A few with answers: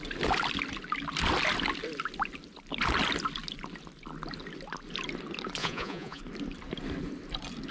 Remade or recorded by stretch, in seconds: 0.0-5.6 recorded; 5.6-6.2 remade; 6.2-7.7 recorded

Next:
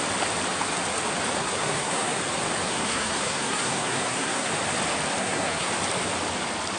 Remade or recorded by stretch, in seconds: 0.0-1.4 recorded; 1.4-2.2 remade; 2.2-2.7 recorded; 2.7-4.5 remade; 4.5-5.2 recorded; 5.2-5.7 remade; 5.7-6.8 recorded

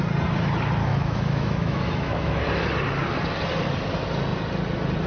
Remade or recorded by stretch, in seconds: 0.0-0.9 recorded; 0.9-2.4 remade; 2.4-5.1 recorded